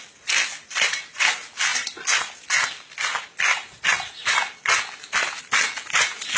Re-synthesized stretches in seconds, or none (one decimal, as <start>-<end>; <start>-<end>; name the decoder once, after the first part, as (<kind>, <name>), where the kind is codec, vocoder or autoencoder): none